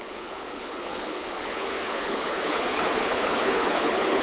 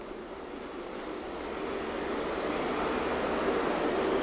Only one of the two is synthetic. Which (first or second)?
first